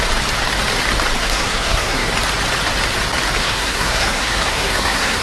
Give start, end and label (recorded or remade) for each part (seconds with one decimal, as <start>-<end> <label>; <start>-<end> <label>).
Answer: 0.0-1.2 recorded; 1.2-2.1 remade; 2.1-3.4 recorded; 3.4-5.2 remade